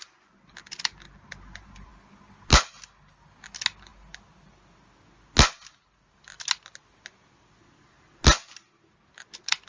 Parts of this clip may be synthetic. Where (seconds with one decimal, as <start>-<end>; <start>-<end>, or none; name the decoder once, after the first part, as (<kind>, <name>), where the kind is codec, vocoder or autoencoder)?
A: none